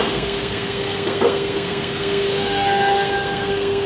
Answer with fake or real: fake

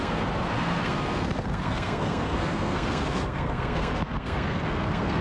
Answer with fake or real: fake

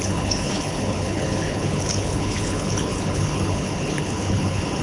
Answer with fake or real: fake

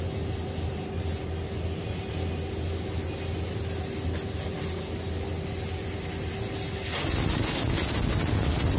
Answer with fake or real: real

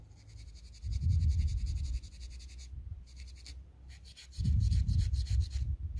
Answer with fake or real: real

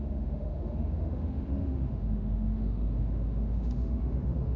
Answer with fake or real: fake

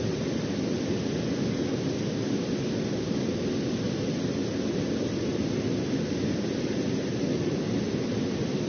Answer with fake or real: real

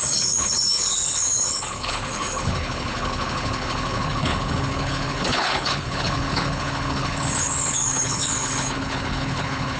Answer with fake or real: fake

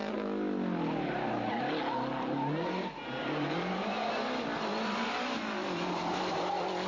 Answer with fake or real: real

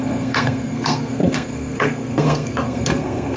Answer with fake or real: fake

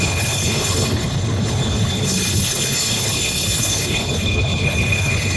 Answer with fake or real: fake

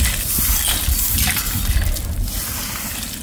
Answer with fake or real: real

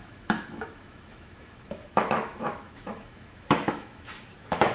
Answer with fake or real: fake